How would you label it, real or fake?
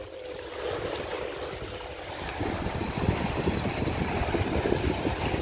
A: real